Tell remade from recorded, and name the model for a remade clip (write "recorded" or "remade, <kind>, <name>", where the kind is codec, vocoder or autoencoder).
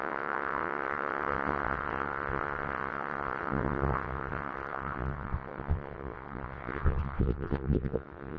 remade, vocoder, WaveNeXt